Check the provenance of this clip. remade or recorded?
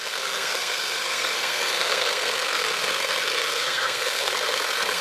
remade